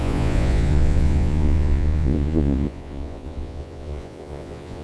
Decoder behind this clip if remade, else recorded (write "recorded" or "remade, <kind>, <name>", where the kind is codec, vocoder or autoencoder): remade, vocoder, Vocos